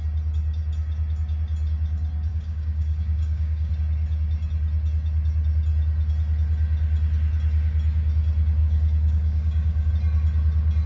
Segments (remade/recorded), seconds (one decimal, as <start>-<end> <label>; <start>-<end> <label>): 0.0-2.3 recorded; 2.3-3.7 remade; 3.7-8.6 recorded; 8.6-9.9 remade; 9.9-10.9 recorded